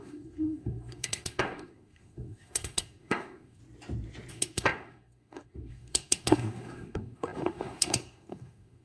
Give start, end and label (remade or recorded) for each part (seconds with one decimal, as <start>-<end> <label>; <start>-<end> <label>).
0.0-3.6 remade; 3.6-4.3 recorded; 4.3-8.8 remade